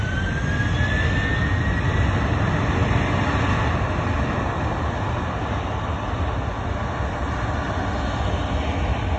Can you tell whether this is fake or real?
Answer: real